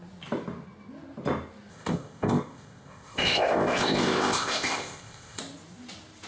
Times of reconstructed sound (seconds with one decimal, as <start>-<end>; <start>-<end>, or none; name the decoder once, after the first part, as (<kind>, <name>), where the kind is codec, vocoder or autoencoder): 1.7-5.4 (codec, ZipCodec)